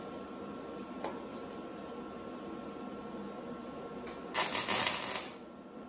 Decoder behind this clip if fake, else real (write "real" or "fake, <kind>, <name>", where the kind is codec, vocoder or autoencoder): real